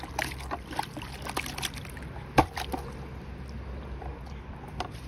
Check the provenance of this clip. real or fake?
real